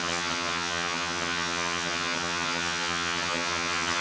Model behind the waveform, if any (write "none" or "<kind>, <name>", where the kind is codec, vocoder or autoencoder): vocoder, HiFi-GAN